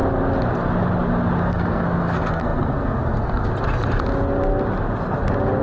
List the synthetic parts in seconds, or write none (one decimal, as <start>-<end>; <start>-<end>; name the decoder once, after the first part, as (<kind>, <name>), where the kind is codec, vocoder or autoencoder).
1.4-3.5 (codec, SNAC)